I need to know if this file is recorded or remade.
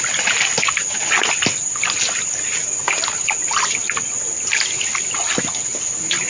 recorded